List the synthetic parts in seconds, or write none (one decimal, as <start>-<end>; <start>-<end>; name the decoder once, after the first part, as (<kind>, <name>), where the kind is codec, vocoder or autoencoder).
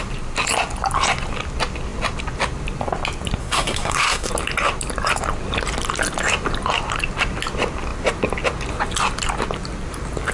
3.4-4.3 (codec, SNAC)